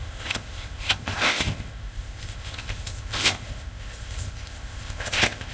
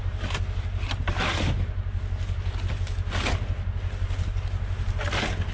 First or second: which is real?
second